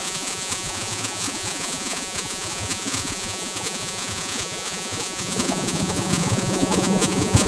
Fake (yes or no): yes